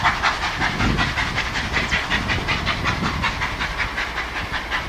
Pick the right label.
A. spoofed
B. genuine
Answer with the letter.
B